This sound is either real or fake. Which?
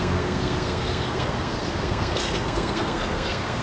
fake